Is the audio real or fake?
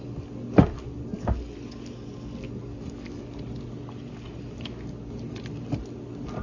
real